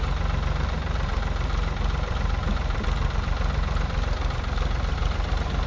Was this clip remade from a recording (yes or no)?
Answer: yes